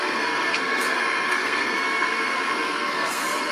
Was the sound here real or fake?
fake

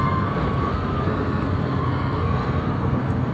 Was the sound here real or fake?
fake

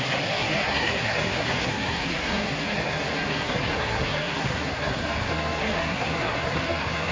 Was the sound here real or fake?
fake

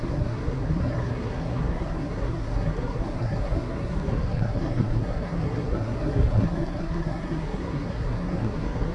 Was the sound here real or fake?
fake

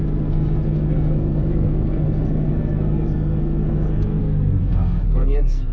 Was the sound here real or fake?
fake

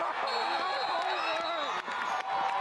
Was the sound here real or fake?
real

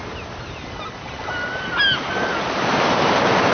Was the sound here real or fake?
real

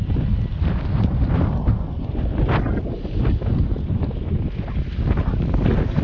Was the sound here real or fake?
real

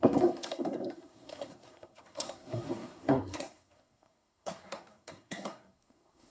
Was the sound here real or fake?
fake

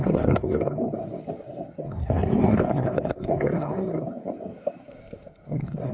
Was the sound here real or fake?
fake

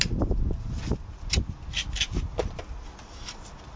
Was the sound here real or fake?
real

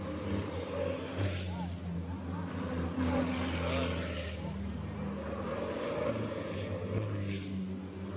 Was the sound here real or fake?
real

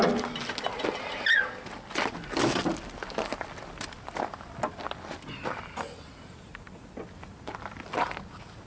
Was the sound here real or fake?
real